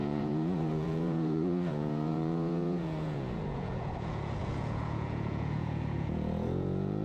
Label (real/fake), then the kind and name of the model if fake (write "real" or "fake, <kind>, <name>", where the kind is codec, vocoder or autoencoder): fake, vocoder, Vocos